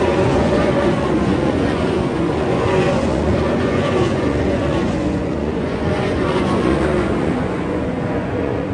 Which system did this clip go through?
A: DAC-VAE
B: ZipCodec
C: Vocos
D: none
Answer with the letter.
C